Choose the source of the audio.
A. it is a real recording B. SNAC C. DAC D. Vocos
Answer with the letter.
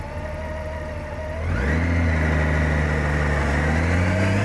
A